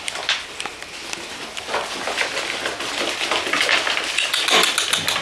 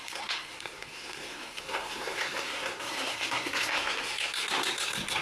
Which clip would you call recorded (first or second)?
first